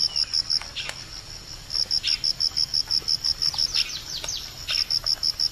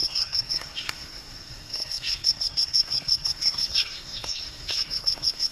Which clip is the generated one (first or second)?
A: second